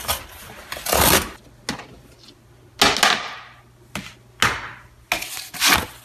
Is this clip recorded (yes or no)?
yes